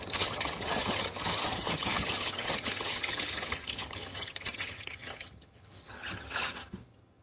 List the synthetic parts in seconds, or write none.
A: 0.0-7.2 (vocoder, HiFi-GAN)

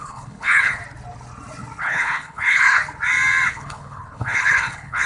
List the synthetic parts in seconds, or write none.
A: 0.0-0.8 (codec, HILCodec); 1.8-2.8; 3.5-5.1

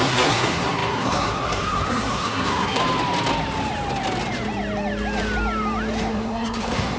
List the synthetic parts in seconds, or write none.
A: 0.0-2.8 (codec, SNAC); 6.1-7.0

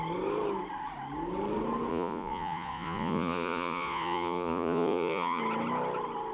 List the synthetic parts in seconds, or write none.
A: 1.9-5.4 (vocoder, Vocos)